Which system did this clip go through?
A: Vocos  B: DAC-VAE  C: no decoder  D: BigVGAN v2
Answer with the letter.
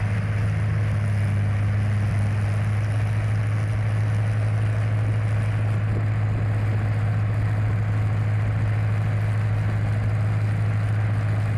C